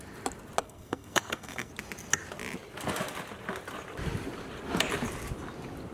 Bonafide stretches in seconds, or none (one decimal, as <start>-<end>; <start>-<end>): 0.0-0.6; 1.7-5.9